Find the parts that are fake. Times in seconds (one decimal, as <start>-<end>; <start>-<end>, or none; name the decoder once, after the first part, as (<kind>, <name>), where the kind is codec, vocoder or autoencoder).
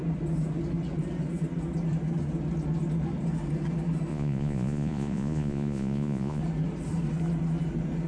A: 4.1-6.4 (vocoder, Vocos)